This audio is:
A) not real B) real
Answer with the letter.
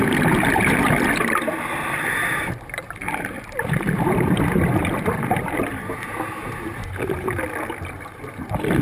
A